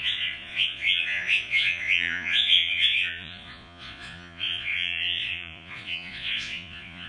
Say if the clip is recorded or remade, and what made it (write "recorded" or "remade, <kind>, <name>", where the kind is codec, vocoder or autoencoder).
remade, vocoder, Vocos